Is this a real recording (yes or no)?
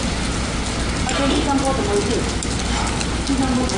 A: yes